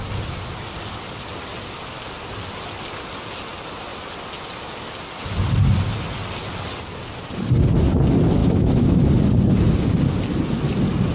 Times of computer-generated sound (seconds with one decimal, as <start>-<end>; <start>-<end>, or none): 8.4-9.1